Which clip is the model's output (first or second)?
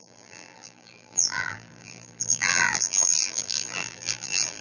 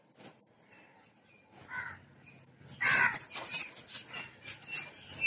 first